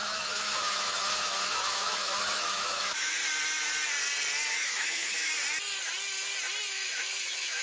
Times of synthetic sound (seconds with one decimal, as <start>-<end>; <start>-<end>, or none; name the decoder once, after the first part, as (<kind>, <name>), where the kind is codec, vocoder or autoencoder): 0.0-3.2 (autoencoder, DAC-VAE); 4.5-5.3; 6.7-7.6